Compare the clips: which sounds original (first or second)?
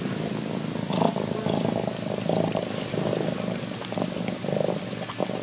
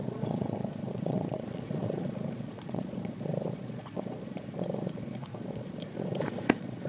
first